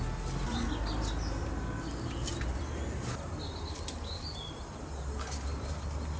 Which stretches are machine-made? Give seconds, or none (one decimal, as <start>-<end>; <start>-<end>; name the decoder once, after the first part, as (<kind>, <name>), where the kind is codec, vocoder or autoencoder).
none